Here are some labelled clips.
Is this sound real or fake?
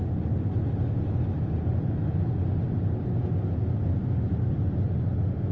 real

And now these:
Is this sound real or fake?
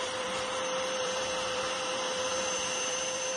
fake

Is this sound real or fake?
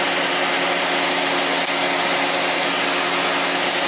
real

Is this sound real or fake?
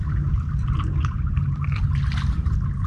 real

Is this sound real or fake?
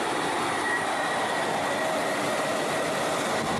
real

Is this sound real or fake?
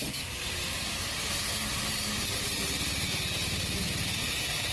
real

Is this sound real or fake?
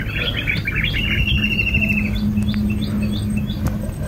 real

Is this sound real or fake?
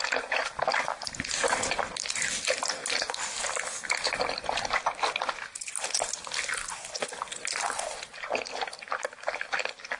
real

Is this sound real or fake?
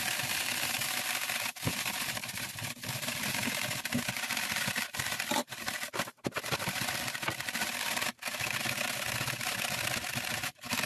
fake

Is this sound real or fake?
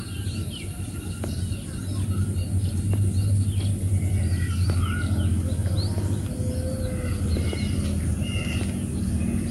real